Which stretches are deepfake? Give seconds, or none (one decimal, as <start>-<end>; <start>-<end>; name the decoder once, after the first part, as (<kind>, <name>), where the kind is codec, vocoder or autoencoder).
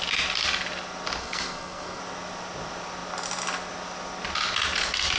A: 1.2-2.0 (codec, SNAC)